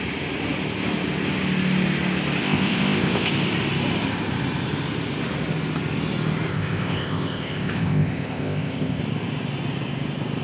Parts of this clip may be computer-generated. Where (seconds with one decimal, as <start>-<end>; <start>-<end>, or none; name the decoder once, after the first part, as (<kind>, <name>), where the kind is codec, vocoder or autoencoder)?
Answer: 2.4-3.3 (codec, ZipCodec); 6.5-9.0